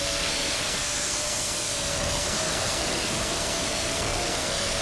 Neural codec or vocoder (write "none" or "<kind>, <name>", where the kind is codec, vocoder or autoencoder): codec, SNAC